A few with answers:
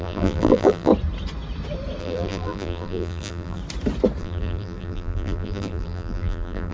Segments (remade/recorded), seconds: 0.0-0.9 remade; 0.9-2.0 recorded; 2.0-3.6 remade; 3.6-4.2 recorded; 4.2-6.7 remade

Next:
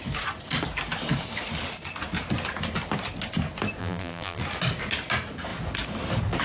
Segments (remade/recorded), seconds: 0.0-3.8 recorded; 3.8-4.4 remade; 4.4-6.4 recorded